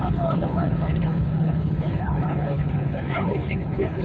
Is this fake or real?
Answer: fake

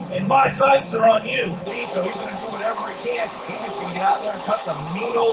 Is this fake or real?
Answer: fake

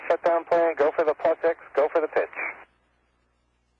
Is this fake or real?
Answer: real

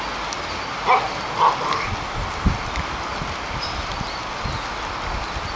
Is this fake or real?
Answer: real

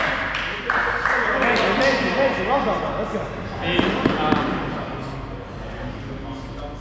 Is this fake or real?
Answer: real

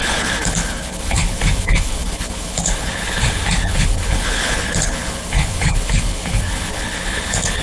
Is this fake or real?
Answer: fake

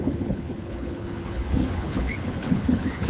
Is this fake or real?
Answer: fake